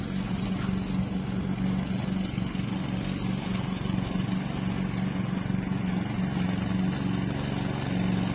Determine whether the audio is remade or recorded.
recorded